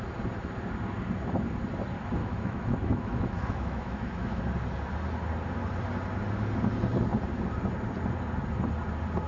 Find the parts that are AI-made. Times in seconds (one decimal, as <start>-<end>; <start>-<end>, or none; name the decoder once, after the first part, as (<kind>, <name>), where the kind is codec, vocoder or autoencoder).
2.2-4.4 (autoencoder, DAC-VAE)